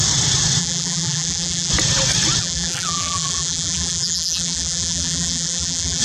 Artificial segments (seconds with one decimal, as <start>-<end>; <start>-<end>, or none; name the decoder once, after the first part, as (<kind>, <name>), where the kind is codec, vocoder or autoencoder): 0.6-1.7 (vocoder, BigVGAN v2); 2.4-6.0